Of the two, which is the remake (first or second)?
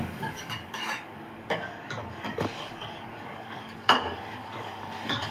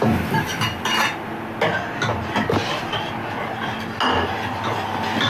first